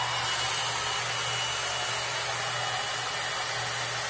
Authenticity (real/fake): real